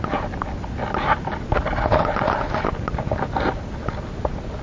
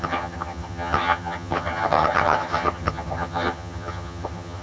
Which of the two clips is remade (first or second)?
second